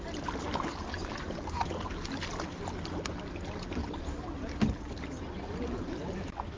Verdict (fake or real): real